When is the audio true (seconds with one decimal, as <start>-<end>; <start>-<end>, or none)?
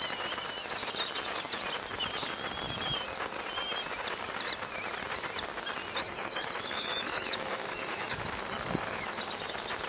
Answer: 0.0-6.0; 9.2-9.9